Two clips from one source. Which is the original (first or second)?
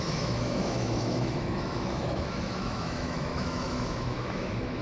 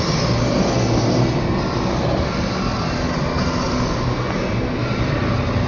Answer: second